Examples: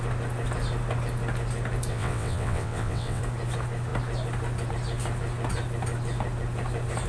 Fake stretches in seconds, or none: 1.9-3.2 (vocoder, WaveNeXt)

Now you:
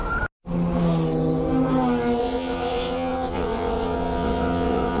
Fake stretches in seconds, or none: 2.2-5.0 (vocoder, WaveNeXt)

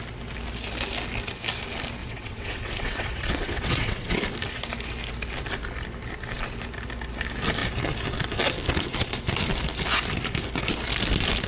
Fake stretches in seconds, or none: 2.0-4.2 (vocoder, WaveNeXt)